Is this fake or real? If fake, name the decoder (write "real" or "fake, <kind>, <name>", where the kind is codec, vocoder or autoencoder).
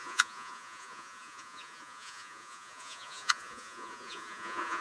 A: fake, vocoder, Vocos